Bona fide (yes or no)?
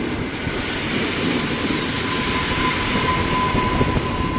yes